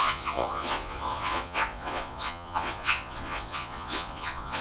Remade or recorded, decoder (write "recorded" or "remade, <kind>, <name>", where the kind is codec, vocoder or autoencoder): remade, vocoder, Vocos